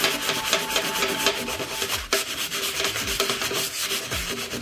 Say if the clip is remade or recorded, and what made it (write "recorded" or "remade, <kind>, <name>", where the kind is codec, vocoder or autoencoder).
remade, vocoder, BigVGAN v2